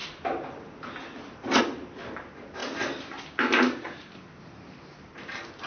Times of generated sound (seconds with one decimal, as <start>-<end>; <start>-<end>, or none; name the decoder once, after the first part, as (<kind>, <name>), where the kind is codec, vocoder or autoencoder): none